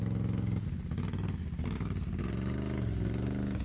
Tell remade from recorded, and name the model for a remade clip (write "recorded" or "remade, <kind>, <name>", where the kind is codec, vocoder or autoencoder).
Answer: recorded